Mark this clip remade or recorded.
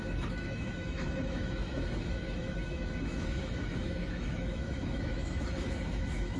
remade